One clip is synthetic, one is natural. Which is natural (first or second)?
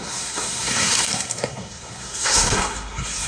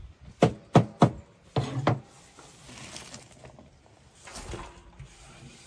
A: second